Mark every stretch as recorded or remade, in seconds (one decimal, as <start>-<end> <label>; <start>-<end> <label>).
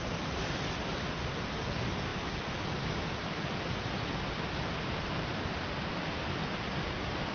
0.0-7.3 recorded